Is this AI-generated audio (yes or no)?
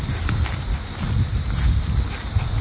no